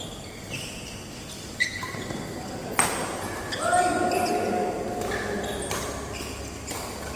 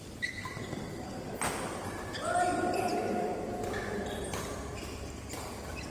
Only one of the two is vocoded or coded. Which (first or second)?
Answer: second